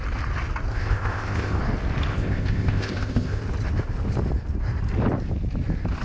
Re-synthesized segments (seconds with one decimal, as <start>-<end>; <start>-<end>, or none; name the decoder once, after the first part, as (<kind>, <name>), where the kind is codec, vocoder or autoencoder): 0.7-1.6 (codec, ZipCodec); 2.1-3.4